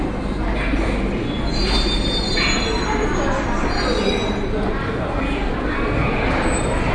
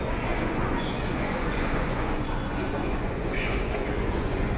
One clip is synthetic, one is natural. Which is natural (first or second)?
first